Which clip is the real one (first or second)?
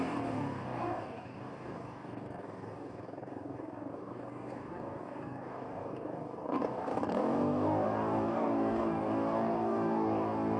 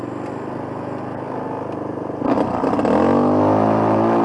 second